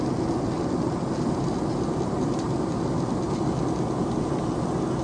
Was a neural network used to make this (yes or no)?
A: no